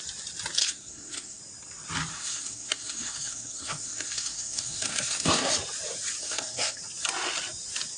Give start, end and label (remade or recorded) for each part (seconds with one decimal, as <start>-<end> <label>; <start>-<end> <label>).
0.0-0.6 recorded; 0.6-1.4 remade; 1.4-2.1 recorded; 2.1-5.5 remade; 5.5-6.2 recorded; 6.2-6.8 remade; 6.8-8.0 recorded